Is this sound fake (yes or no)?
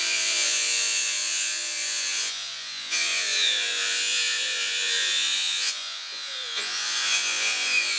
yes